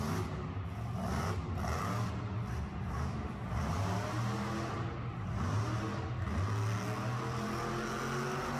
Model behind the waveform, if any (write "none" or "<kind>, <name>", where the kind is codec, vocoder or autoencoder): none